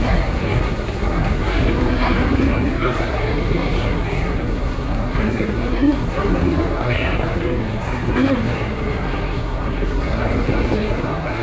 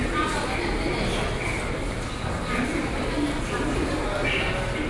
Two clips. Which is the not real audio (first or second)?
first